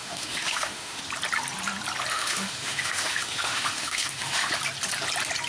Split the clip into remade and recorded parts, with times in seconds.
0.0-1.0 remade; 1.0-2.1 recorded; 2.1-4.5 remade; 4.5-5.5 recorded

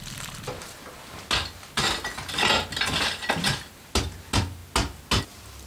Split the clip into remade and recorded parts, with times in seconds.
0.0-5.7 recorded

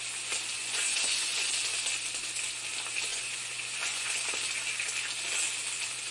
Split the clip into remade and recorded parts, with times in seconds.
0.0-0.6 recorded; 0.6-1.5 remade; 1.5-3.1 recorded; 3.1-4.2 remade; 4.2-6.1 recorded

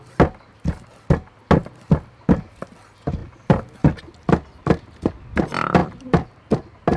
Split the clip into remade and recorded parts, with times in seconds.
0.0-7.0 recorded

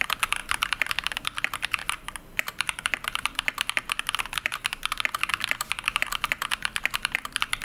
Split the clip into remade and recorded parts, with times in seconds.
0.0-7.6 remade

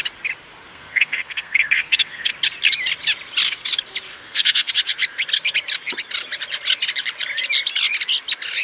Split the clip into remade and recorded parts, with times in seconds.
0.0-0.7 recorded; 0.7-2.3 remade; 2.3-4.1 recorded; 4.1-4.7 remade; 4.7-8.6 recorded

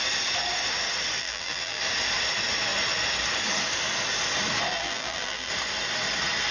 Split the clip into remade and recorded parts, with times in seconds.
0.0-1.2 recorded; 1.2-1.8 remade; 1.8-4.7 recorded; 4.7-5.5 remade; 5.5-6.5 recorded